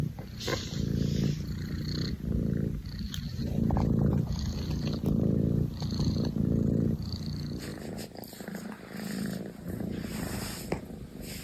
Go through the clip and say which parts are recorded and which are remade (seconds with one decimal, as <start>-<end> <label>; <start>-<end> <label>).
0.0-4.1 recorded; 4.1-4.7 remade; 4.7-11.4 recorded